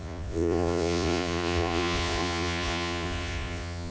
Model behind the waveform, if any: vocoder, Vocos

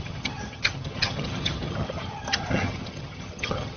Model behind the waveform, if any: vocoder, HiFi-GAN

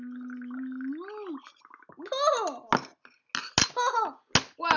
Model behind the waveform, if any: none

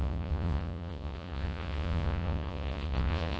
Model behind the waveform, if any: vocoder, Vocos